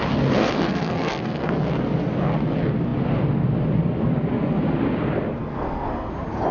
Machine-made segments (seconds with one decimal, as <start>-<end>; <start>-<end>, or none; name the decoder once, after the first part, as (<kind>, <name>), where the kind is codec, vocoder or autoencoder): 0.4-1.5 (codec, SNAC); 5.4-6.1